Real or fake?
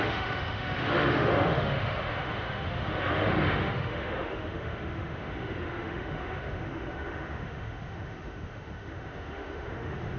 fake